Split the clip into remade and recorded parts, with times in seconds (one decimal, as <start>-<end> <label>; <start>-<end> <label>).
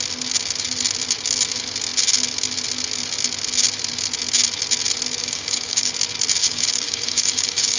0.0-5.2 recorded; 5.2-5.9 remade; 5.9-6.4 recorded; 6.4-7.8 remade